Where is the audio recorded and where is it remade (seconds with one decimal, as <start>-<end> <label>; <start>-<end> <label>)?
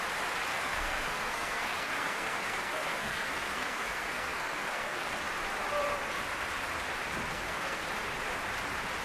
0.0-0.5 recorded; 0.5-5.2 remade; 5.2-7.3 recorded; 7.3-7.8 remade; 7.8-9.0 recorded